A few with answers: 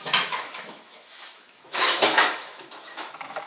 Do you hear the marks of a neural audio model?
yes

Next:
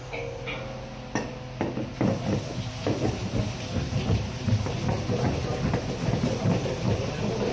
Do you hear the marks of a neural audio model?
no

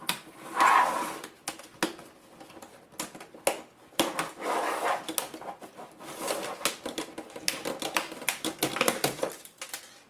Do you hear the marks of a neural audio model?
no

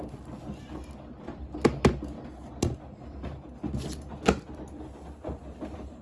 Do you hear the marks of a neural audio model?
no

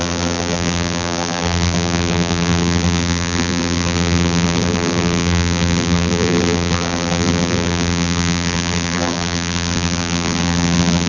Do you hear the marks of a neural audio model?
yes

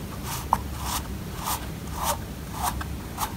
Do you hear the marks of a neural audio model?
no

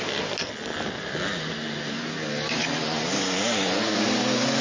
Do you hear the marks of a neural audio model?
no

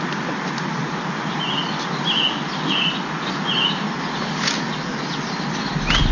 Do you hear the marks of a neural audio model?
no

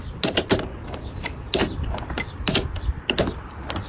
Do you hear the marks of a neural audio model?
no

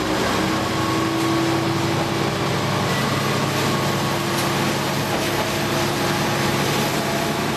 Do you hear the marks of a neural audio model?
no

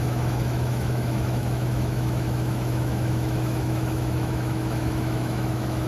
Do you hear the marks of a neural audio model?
yes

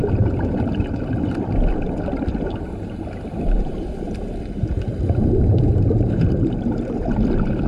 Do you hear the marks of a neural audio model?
no